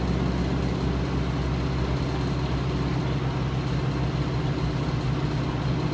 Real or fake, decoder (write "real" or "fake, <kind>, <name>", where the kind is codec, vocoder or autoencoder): real